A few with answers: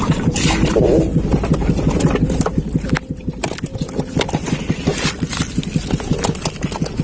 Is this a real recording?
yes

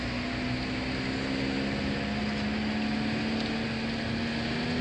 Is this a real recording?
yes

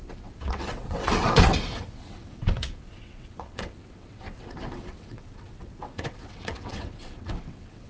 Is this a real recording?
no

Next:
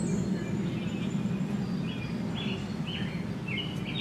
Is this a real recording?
yes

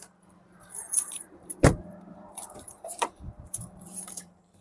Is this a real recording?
no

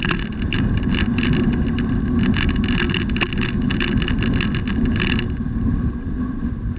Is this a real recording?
yes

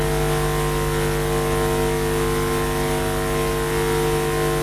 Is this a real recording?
yes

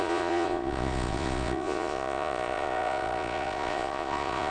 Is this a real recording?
no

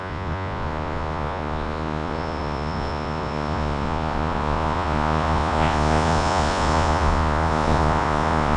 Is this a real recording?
no